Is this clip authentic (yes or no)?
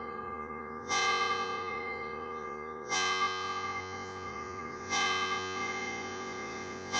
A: no